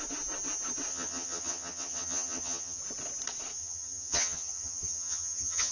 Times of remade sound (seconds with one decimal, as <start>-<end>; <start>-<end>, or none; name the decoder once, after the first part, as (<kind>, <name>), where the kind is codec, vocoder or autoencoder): 0.9-2.8 (vocoder, HiFi-GAN); 3.6-5.7